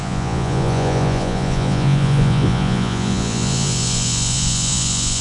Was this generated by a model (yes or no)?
yes